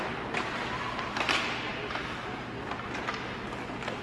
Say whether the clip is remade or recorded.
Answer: recorded